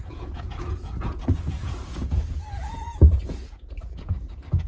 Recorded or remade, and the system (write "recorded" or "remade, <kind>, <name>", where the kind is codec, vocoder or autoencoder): remade, vocoder, Vocos